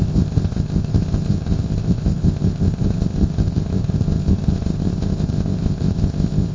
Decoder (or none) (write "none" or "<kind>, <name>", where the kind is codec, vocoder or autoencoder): codec, ZipCodec